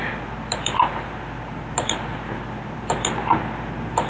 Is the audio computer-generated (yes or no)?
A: no